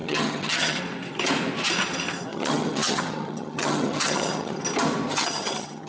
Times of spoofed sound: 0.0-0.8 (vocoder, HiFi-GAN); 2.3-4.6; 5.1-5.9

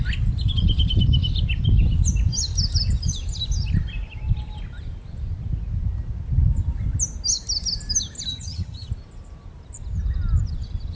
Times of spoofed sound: 8.3-8.9 (vocoder, HiFi-GAN)

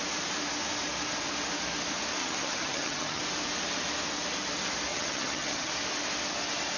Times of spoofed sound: 2.2-3.2 (vocoder, HiFi-GAN); 4.9-5.7

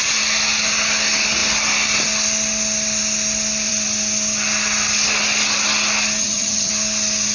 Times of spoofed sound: 6.2-6.7 (vocoder, HiFi-GAN)

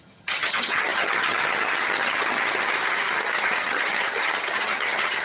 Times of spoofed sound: 0.0-5.2 (vocoder, HiFi-GAN)